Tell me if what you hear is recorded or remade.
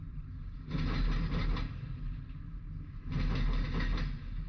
recorded